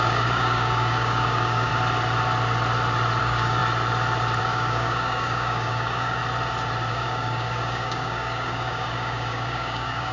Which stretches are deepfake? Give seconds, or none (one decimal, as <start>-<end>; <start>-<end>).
0.0-1.7; 3.2-3.6; 4.4-6.2; 6.9-10.1